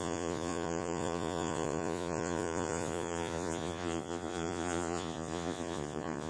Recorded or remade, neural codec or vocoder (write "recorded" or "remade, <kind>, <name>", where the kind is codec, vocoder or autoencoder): remade, vocoder, Vocos